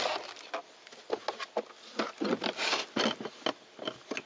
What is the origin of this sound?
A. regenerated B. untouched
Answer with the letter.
B